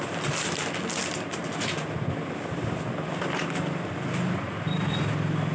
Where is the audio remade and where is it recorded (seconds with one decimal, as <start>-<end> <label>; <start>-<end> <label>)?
0.0-5.5 recorded